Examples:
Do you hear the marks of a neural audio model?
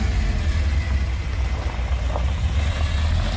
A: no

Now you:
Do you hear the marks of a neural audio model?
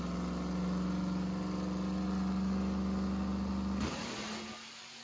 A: no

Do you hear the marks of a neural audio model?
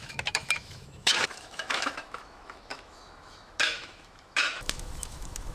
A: yes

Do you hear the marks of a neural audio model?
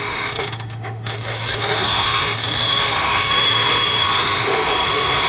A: yes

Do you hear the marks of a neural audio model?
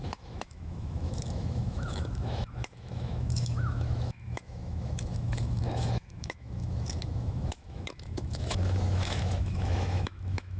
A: yes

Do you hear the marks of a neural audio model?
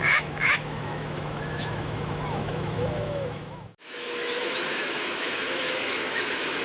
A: yes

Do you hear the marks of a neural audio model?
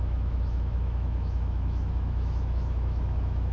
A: yes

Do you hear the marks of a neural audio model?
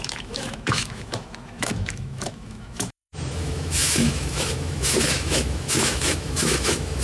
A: yes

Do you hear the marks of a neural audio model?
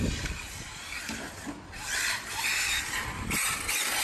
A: no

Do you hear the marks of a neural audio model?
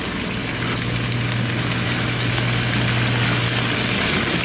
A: no